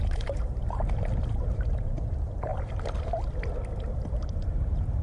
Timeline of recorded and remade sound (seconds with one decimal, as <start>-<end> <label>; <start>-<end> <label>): 0.0-0.6 remade; 0.6-1.4 recorded; 1.4-2.5 remade; 2.5-4.3 recorded; 4.3-5.0 remade